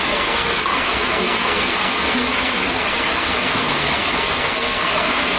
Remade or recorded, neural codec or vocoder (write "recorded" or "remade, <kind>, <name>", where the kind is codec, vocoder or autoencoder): remade, codec, SNAC